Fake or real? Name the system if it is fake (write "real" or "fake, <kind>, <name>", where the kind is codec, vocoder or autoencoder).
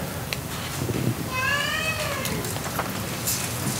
real